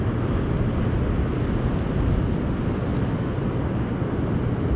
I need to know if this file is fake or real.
real